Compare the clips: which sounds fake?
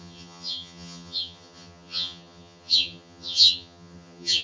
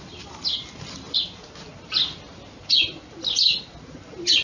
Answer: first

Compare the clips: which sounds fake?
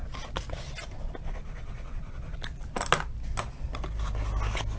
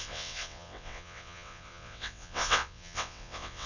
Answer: second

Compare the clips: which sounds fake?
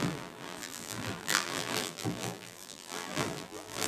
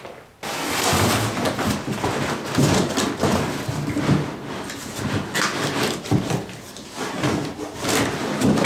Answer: first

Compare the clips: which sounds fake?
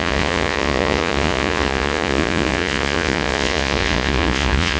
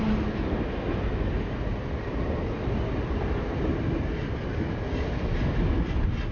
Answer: first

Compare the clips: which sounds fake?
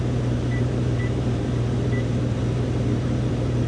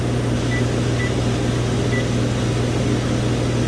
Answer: first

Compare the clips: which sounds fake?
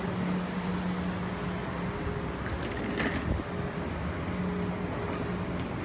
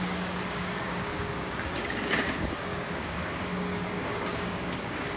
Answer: second